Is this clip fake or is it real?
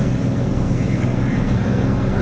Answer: fake